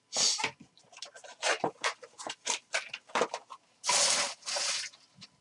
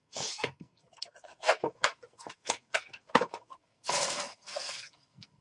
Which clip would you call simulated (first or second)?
second